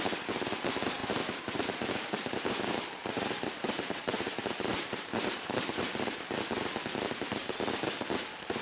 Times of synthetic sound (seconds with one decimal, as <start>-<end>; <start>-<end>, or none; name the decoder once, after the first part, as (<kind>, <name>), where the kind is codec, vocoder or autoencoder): 1.0-6.2 (vocoder, BigVGAN v2)